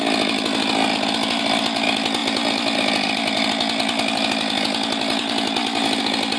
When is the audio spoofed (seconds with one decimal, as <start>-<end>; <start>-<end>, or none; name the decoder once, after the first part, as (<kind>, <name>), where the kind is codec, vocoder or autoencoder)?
none